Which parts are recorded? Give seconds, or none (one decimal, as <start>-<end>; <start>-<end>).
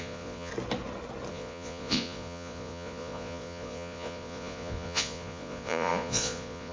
0.5-1.3